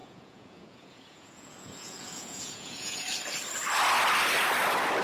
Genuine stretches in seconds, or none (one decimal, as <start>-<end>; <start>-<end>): 3.0-5.0